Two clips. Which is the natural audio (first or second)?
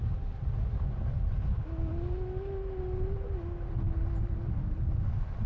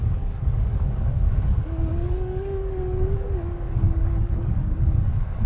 first